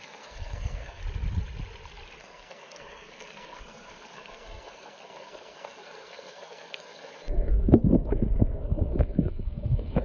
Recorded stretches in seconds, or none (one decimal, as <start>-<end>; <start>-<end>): 1.0-2.2